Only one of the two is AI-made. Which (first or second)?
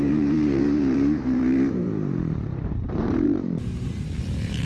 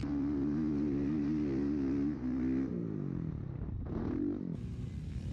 first